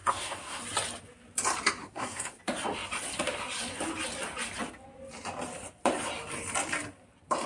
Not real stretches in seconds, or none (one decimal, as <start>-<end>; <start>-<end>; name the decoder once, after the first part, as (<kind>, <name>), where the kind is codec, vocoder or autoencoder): 0.0-0.6 (codec, SNAC); 1.8-2.4